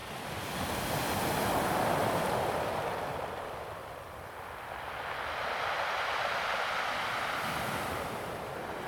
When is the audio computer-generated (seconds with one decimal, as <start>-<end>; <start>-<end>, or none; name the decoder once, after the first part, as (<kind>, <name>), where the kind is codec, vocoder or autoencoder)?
2.0-4.3 (vocoder, BigVGAN v2)